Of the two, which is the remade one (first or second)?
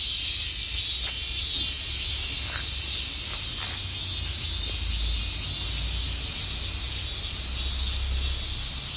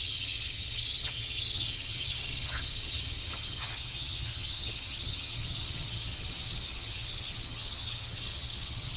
second